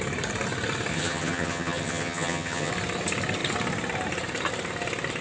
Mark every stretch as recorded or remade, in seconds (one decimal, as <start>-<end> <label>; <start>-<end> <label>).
0.0-0.9 recorded; 0.9-2.7 remade; 2.7-5.2 recorded